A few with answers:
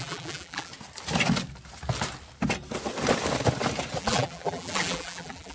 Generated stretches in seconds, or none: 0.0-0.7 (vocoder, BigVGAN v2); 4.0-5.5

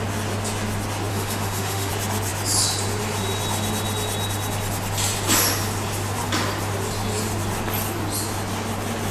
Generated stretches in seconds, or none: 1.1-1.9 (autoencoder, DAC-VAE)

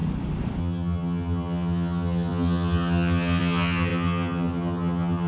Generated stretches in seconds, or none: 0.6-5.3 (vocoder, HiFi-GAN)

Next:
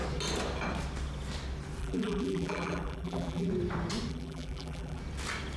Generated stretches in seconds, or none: 1.8-3.5 (vocoder, BigVGAN v2); 4.1-5.0

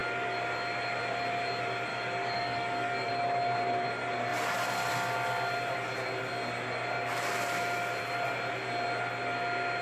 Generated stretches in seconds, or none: 1.9-3.1 (codec, DAC)

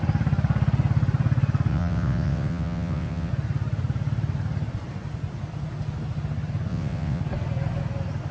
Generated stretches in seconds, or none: 1.7-3.3 (vocoder, WaveNeXt); 6.7-7.2

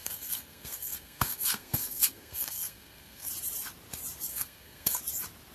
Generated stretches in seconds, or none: 0.0-3.3 (codec, SNAC); 4.3-5.0

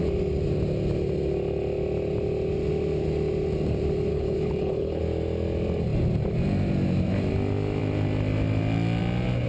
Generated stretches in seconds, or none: 4.1-5.0 (codec, HILCodec)